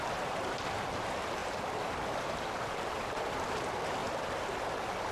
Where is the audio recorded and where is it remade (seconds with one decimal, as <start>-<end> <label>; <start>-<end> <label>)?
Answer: 0.0-5.1 recorded

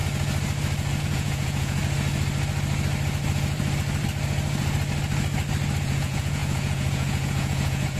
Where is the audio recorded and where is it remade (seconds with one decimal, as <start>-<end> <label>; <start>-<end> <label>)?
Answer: 0.0-1.0 recorded; 1.0-1.8 remade; 1.8-5.8 recorded; 5.8-8.0 remade